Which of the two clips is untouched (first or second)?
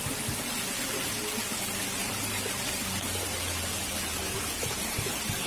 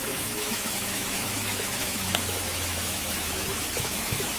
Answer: first